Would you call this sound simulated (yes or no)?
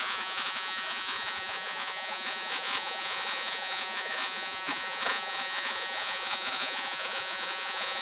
yes